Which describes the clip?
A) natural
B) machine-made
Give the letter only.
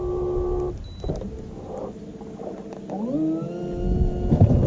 A